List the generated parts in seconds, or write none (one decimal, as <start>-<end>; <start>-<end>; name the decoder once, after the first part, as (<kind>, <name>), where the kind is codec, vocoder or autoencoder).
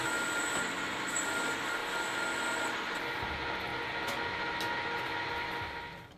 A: none